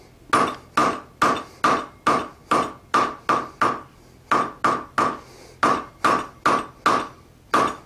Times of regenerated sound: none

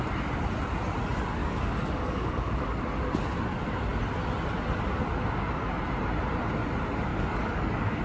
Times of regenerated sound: 1.4-2.8 (codec, DAC); 7.1-8.0

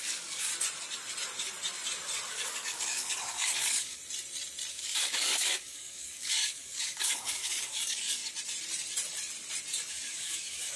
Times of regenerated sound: 0.0-0.5 (codec, DAC); 2.3-4.0; 4.7-8.2; 9.9-10.8

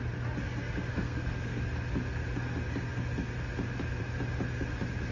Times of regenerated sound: 0.9-1.6 (codec, SNAC)